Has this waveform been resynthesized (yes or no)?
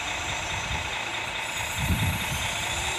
yes